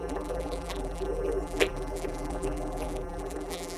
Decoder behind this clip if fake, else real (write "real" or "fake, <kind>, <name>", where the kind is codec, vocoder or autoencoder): fake, vocoder, BigVGAN v2